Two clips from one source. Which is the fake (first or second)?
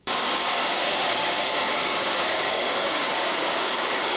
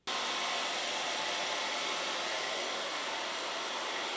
first